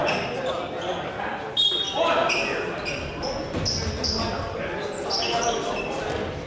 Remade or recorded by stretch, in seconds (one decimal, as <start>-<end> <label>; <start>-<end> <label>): 0.0-6.5 recorded